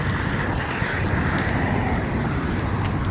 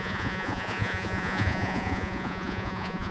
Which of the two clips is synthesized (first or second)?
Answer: second